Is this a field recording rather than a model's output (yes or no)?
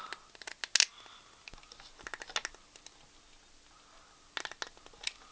yes